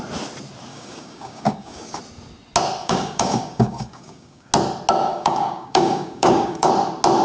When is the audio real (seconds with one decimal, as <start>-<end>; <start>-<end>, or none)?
0.0-0.7; 2.0-2.8; 4.5-5.1; 6.7-7.2